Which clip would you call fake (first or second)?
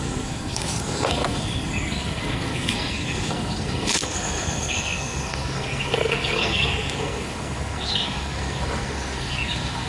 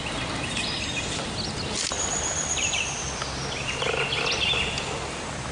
first